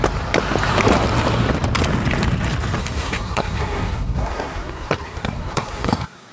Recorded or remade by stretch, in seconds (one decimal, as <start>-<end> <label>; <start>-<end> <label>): 0.0-2.8 recorded; 2.8-6.3 remade

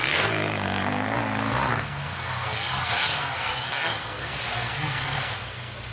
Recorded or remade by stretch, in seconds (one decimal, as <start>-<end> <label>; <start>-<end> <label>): 0.0-5.9 remade

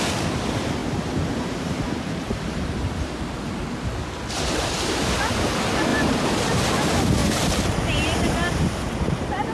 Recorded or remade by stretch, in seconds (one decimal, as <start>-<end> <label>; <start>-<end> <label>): 0.0-0.8 recorded; 0.8-3.7 remade; 3.7-5.9 recorded; 5.9-6.4 remade; 6.4-7.2 recorded; 7.2-8.9 remade; 8.9-9.5 recorded

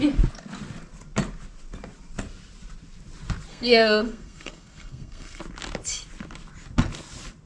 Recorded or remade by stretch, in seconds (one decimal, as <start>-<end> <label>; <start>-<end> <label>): 0.0-3.5 recorded; 3.5-5.4 remade; 5.4-7.5 recorded

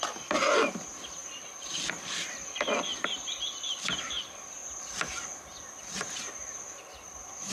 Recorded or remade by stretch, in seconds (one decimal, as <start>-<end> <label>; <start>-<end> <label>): 0.0-7.5 recorded

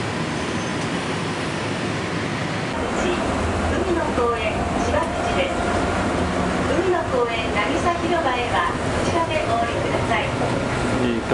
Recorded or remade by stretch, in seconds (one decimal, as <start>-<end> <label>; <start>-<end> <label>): 0.0-11.3 recorded

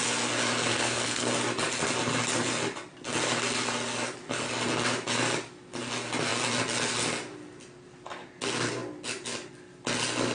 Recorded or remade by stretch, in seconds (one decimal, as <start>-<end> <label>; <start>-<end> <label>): 0.0-0.7 recorded; 0.7-1.3 remade; 1.3-10.3 recorded

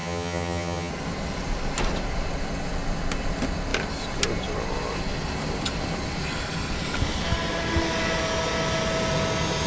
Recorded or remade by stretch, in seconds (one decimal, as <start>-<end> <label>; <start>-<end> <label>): 0.0-0.9 remade; 0.9-9.7 recorded